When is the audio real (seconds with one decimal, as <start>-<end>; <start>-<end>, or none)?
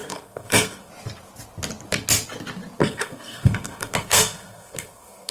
0.9-2.8